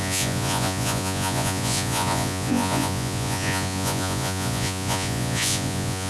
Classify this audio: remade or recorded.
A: remade